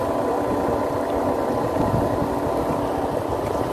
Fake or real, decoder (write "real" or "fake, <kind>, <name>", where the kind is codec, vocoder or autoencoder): real